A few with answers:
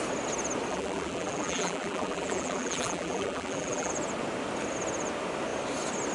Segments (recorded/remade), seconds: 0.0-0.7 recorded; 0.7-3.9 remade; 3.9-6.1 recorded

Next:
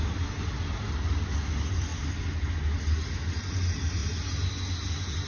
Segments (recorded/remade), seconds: 0.0-5.3 recorded